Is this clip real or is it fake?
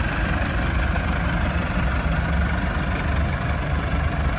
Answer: fake